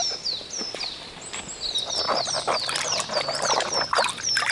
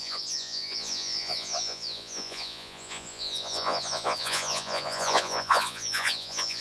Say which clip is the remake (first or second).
second